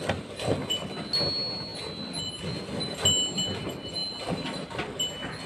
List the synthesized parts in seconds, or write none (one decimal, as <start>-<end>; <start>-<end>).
none